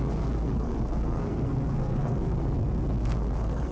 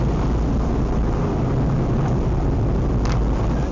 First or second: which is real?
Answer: second